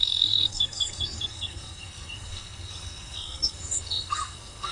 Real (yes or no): no